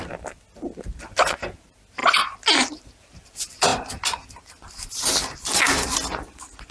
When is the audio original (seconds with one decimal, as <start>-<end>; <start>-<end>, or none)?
0.0-6.7